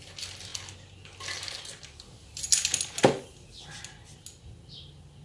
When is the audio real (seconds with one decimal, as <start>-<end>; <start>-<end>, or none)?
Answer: 0.0-5.2